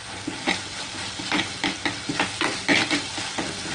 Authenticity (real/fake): real